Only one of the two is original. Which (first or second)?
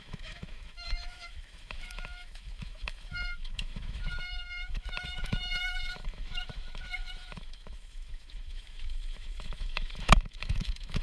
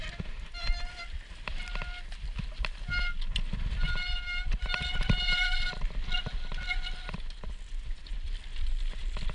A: second